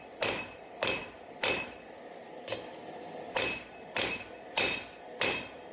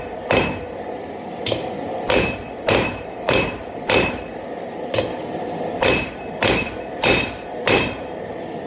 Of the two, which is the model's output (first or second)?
second